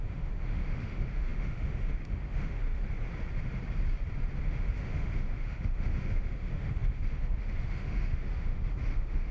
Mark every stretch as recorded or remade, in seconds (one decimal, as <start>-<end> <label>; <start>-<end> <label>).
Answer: 0.0-2.8 remade; 2.8-4.4 recorded; 4.4-9.3 remade